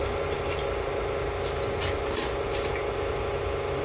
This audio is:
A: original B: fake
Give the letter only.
A